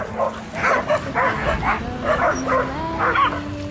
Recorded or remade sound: recorded